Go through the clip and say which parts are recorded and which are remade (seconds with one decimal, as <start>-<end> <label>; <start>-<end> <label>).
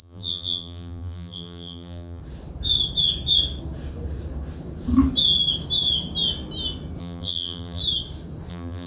0.0-2.2 remade; 2.2-7.0 recorded; 7.0-7.8 remade; 7.8-8.5 recorded; 8.5-8.9 remade